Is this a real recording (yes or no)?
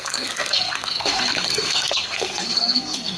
no